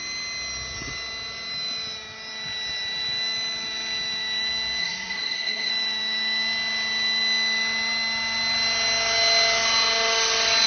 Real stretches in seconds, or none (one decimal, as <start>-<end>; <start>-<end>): 0.0-4.8; 5.7-10.7